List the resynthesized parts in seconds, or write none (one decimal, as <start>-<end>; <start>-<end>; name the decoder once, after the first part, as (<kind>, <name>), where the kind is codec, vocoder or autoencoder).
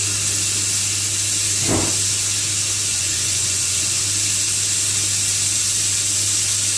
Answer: 2.9-4.0 (vocoder, Vocos)